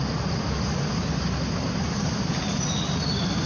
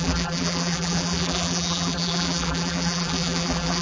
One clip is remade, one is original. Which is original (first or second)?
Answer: first